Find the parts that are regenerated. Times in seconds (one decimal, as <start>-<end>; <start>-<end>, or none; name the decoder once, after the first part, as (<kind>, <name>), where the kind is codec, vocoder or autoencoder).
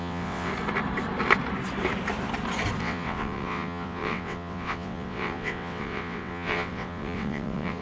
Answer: 0.0-0.5 (vocoder, WaveNeXt); 2.8-7.8